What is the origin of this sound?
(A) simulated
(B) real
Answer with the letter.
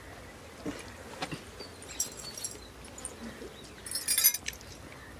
B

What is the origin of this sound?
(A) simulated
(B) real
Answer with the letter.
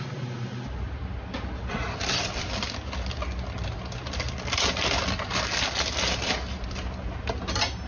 B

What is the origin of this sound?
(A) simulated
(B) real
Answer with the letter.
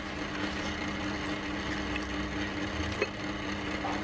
B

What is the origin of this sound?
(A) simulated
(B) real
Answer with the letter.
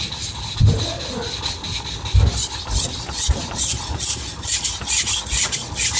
A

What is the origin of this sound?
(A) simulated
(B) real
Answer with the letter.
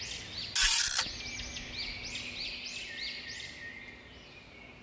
B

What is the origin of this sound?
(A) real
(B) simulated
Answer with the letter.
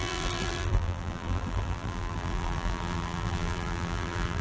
B